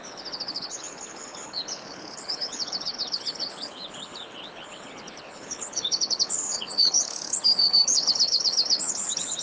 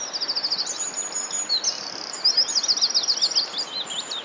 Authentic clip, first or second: second